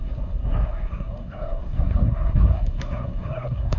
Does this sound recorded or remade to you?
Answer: remade